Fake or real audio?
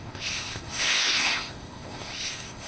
fake